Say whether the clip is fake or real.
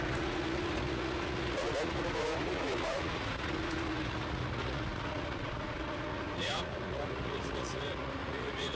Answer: fake